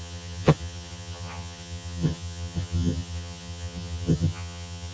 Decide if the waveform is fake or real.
fake